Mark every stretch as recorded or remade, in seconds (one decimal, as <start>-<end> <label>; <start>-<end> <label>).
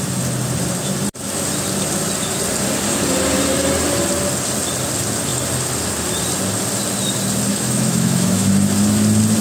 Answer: 0.0-7.5 recorded; 7.5-8.5 remade; 8.5-9.4 recorded